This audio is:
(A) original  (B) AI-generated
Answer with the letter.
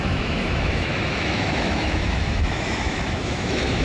B